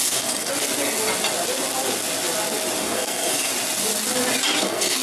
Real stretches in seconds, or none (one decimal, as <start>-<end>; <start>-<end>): 0.5-2.8; 3.5-4.6